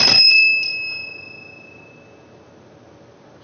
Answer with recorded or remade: recorded